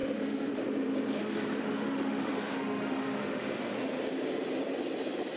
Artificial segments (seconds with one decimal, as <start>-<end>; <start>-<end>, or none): 0.0-0.6; 1.2-3.7